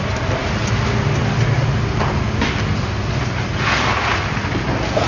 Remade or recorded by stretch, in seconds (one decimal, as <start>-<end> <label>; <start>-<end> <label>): 0.0-5.1 recorded